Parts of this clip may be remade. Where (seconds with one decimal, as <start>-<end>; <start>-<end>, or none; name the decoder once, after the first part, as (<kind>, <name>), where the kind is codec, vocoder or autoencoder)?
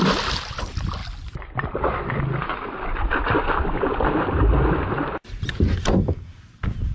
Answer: none